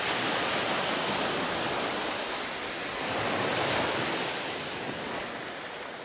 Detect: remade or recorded recorded